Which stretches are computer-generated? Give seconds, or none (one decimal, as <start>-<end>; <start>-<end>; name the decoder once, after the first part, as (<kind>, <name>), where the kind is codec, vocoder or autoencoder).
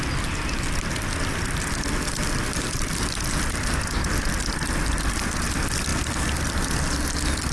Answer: 5.9-6.7 (vocoder, BigVGAN v2)